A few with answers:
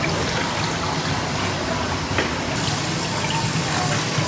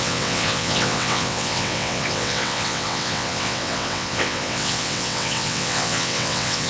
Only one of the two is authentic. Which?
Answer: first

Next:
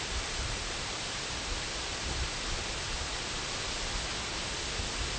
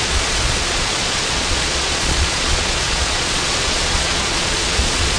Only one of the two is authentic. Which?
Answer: first